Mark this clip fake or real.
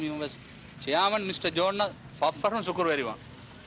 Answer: real